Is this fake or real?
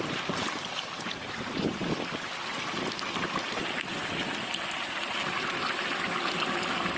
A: real